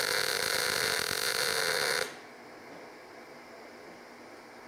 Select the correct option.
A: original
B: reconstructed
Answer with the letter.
A